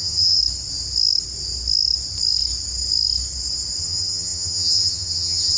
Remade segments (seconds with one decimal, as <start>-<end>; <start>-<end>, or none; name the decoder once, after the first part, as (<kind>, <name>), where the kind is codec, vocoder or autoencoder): 0.0-0.4 (vocoder, HiFi-GAN); 3.8-5.6